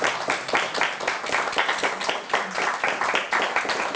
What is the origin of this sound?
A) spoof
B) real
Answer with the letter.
B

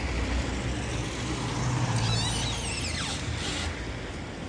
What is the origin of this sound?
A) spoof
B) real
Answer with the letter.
B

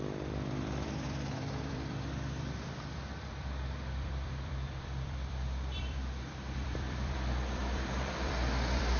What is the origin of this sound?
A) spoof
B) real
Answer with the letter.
A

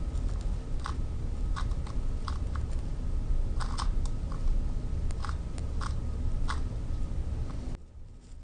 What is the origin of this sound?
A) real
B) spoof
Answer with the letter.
A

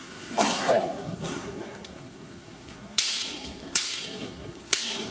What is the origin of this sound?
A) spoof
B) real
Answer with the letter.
A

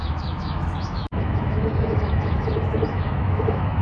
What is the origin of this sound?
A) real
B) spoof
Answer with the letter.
B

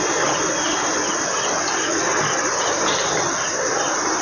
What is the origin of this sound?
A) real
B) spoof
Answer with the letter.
A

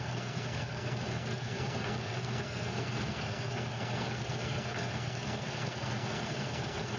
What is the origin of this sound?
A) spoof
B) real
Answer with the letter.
A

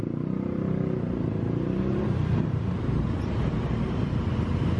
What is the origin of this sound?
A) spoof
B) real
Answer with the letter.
B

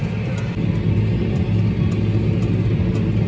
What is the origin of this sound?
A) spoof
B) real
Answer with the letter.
B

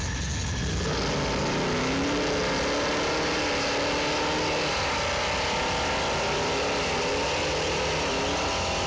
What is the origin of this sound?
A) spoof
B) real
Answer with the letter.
B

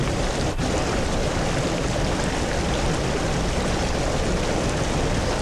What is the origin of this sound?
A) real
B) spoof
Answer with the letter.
A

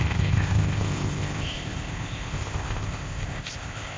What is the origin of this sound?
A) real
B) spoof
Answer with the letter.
B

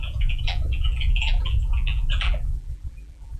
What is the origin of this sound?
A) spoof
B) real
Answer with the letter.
A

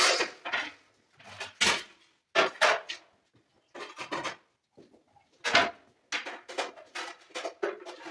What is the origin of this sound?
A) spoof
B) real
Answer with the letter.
B